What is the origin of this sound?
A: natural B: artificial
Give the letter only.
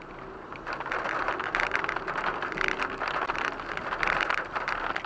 A